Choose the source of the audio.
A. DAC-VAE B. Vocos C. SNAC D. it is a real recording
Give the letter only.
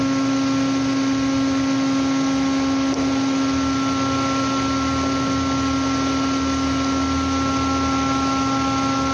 D